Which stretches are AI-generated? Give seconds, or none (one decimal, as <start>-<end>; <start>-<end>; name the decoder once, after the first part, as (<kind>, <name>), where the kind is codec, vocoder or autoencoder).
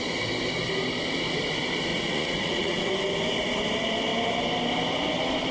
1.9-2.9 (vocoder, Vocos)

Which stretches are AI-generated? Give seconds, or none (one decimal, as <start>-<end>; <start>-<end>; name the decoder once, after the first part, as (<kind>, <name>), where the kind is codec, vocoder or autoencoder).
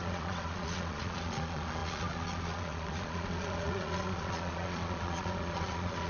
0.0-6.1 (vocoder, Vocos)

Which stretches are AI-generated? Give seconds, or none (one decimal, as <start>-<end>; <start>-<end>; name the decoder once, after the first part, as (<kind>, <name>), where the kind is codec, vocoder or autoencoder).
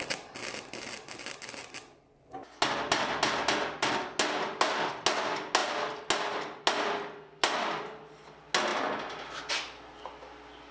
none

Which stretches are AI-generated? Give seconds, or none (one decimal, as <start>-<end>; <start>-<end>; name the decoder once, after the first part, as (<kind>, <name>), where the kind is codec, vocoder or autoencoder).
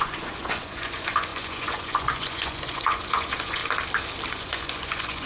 0.0-3.6 (vocoder, Vocos); 4.3-5.3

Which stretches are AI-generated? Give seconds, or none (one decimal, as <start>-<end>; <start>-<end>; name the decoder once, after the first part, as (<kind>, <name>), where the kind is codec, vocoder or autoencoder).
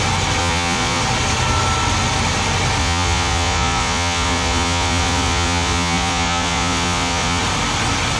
0.4-1.0 (vocoder, Vocos); 2.8-7.4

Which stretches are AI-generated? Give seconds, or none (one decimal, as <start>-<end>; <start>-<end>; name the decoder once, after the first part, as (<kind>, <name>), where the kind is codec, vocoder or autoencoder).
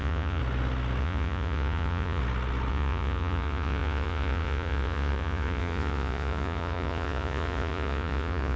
0.0-0.4 (vocoder, Vocos); 1.0-2.2; 2.7-8.6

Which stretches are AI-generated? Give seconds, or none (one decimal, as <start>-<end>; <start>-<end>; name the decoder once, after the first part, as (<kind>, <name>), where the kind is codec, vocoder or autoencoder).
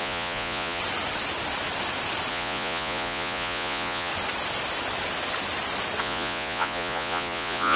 0.0-0.8 (vocoder, Vocos); 2.3-4.1; 6.0-7.8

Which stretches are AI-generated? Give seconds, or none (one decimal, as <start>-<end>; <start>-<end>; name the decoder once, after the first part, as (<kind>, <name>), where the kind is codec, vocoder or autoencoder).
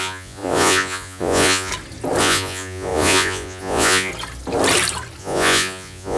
0.0-1.7 (vocoder, Vocos); 2.2-4.1; 5.2-6.2